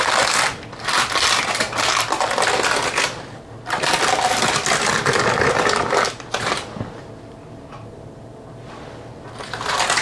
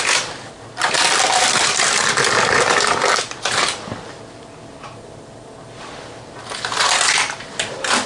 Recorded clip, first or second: first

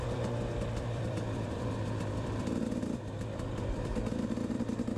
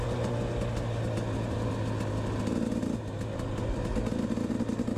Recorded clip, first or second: second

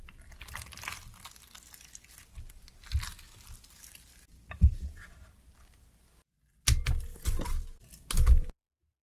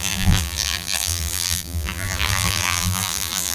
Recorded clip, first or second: first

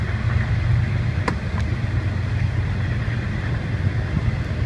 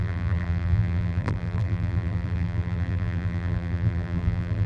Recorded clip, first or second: first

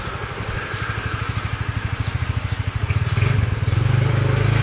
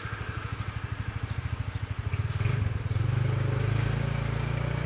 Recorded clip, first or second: second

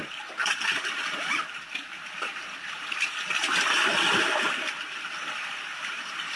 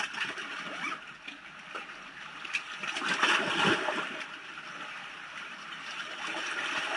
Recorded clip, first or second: second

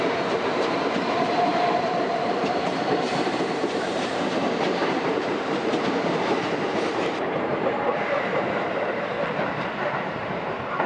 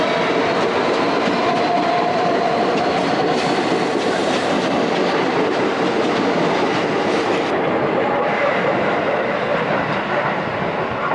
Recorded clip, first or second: second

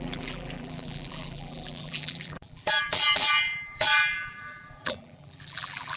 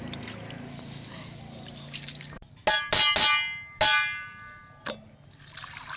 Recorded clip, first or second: second